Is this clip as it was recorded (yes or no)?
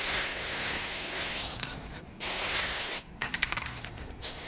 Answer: no